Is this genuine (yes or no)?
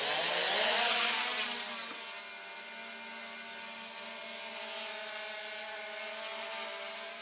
yes